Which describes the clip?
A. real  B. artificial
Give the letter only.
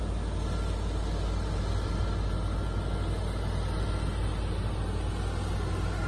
A